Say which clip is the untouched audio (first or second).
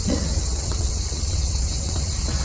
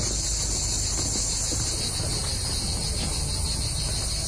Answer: second